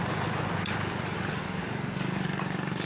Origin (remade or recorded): remade